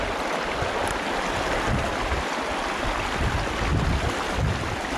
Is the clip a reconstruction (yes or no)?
no